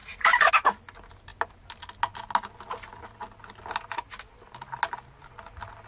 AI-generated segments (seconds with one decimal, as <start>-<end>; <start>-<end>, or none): none